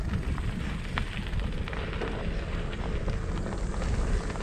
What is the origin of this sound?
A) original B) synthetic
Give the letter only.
A